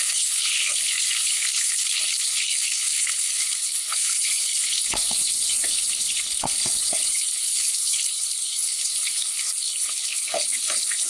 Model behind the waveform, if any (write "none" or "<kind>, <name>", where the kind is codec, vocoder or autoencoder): codec, HILCodec